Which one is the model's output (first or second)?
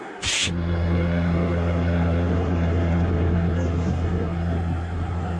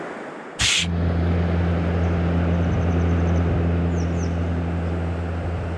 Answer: first